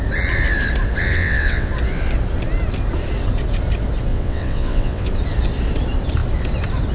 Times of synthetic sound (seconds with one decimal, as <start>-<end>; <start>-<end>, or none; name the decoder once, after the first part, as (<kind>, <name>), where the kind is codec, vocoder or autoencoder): 1.1-1.7 (vocoder, WaveNeXt); 4.1-5.1